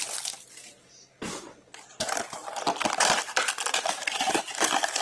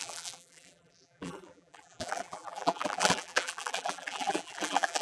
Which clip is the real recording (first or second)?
first